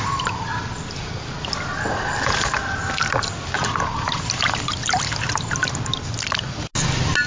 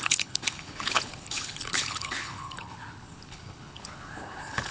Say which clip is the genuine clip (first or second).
first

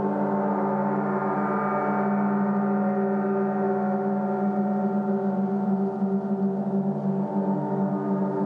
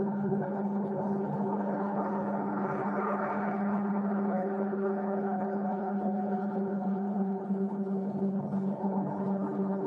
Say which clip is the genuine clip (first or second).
first